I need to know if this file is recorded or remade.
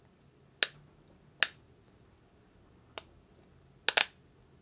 recorded